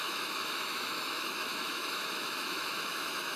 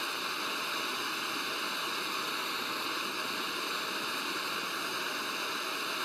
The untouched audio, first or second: second